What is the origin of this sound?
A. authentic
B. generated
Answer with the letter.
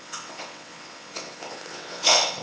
B